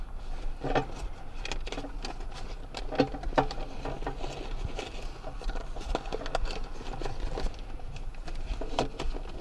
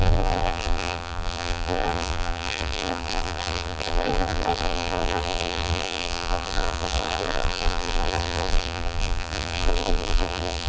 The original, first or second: first